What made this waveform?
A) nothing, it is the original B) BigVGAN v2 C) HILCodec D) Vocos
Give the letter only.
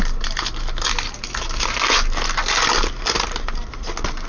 A